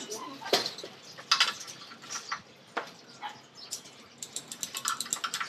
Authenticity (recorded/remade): recorded